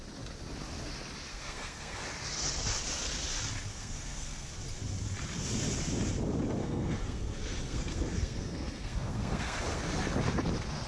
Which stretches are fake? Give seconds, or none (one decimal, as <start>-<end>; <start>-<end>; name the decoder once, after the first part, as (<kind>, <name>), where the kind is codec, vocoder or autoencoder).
1.3-2.0 (codec, SNAC); 3.7-4.5; 6.6-9.8